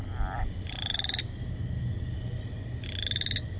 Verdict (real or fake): real